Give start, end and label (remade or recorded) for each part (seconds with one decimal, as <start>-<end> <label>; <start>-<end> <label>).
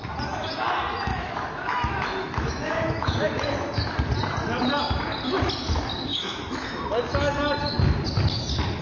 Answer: 0.0-1.1 recorded; 1.1-3.9 remade; 3.9-6.1 recorded; 6.1-6.8 remade; 6.8-8.8 recorded